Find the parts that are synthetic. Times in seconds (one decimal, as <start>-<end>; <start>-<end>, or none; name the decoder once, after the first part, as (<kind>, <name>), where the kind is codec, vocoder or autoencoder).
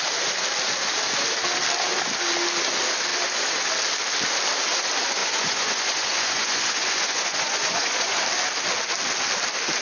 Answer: 5.2-8.2 (vocoder, Vocos)